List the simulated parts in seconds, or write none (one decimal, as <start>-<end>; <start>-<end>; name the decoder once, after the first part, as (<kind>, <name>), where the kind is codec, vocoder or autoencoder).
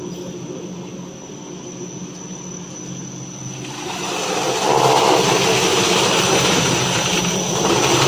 5.7-8.1 (vocoder, BigVGAN v2)